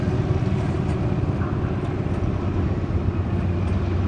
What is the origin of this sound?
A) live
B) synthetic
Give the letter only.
A